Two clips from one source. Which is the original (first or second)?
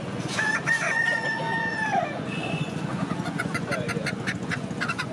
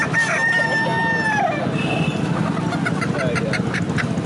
second